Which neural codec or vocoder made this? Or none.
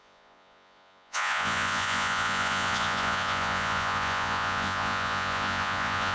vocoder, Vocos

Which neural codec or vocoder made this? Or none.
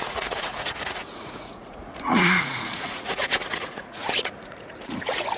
vocoder, Vocos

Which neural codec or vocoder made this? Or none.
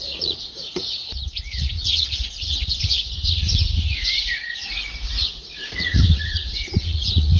vocoder, Vocos